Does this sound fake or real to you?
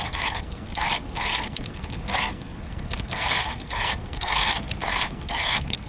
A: fake